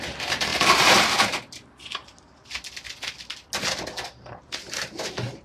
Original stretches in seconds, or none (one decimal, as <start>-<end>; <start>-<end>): 2.0-4.1